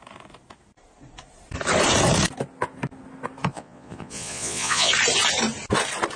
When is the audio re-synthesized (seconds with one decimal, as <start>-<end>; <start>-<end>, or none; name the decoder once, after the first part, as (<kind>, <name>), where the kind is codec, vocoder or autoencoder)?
3.5-4.9 (vocoder, Vocos)